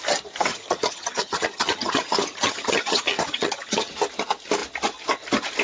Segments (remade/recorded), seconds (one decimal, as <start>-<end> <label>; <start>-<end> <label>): 0.0-0.5 recorded; 0.5-3.9 remade; 3.9-5.6 recorded